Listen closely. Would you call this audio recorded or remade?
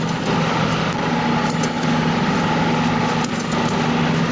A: recorded